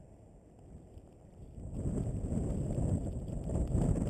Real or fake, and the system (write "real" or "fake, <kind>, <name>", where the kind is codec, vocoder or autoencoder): real